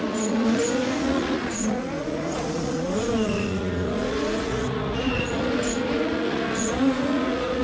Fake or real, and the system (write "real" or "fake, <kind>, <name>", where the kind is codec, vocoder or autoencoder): fake, vocoder, Vocos